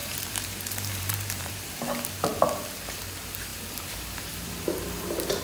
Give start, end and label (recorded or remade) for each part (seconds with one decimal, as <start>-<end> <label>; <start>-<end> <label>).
0.0-1.7 remade; 1.7-3.5 recorded; 3.5-5.4 remade